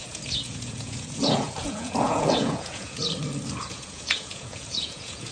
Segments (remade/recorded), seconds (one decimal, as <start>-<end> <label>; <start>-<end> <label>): 0.0-3.0 remade; 3.0-3.6 recorded; 3.6-5.3 remade